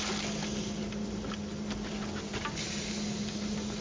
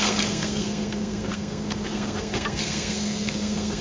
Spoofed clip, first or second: second